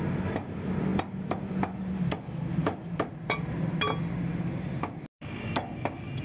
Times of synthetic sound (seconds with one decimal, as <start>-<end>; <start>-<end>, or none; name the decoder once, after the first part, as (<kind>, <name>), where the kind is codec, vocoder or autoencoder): none